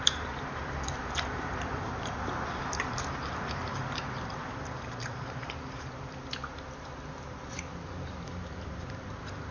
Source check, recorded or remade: remade